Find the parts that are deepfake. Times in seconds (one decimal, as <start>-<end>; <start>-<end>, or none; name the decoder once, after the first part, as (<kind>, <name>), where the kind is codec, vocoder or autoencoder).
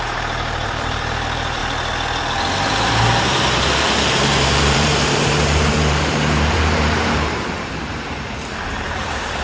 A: 0.0-1.6 (vocoder, BigVGAN v2); 3.0-9.4